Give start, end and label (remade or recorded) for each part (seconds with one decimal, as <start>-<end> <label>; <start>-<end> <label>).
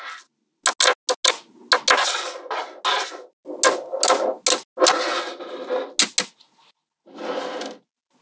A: 0.0-8.2 recorded